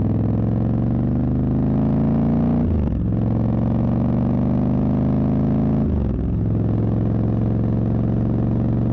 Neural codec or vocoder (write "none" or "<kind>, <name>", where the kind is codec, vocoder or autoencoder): none